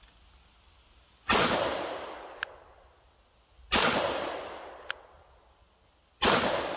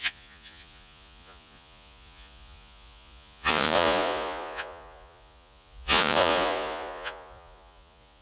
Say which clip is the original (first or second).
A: first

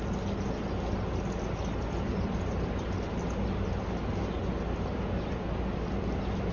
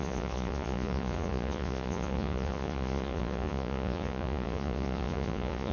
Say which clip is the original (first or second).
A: first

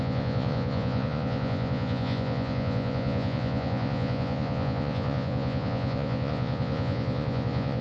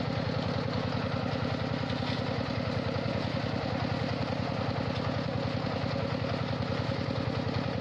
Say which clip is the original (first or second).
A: second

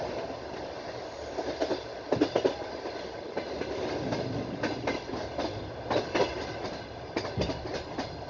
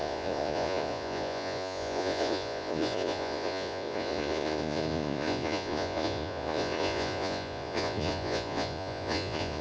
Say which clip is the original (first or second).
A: first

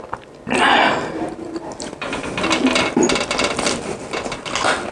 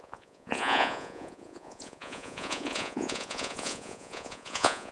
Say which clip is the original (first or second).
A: first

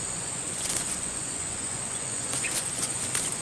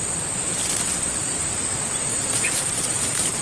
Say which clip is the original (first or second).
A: second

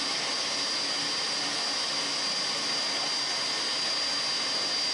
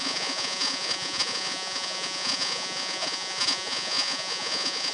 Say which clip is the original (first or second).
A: first